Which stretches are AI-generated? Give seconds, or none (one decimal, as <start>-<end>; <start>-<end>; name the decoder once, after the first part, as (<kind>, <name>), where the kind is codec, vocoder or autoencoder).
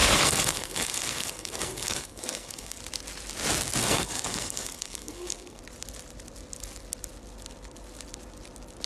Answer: 0.0-2.8 (codec, SNAC); 3.8-5.6